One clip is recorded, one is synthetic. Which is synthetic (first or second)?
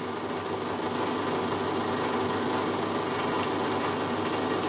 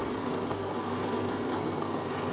second